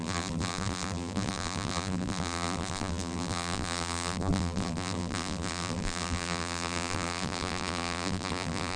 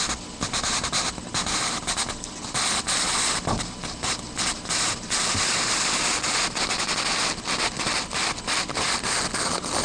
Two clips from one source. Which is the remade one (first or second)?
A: first